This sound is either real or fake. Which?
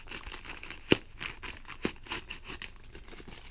real